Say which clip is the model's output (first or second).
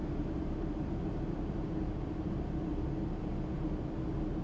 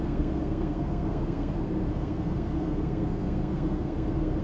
second